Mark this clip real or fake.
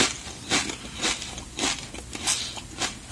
real